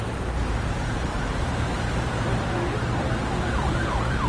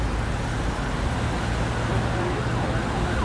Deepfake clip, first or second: first